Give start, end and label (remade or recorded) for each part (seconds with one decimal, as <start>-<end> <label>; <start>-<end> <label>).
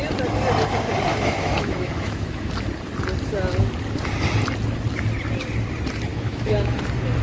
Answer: 0.0-1.1 recorded; 1.1-2.5 remade; 2.5-6.1 recorded; 6.1-6.8 remade; 6.8-7.2 recorded